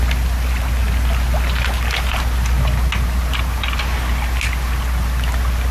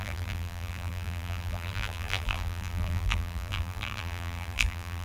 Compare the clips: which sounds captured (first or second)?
first